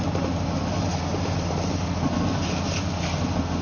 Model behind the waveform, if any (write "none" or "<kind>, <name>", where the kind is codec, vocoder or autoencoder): none